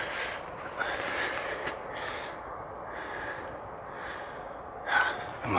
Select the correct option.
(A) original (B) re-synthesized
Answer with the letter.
A